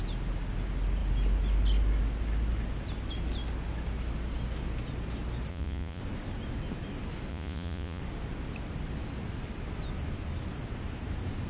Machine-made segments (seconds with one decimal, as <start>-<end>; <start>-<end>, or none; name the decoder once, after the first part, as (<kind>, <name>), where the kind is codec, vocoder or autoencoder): 5.5-6.0 (vocoder, Vocos); 7.3-8.0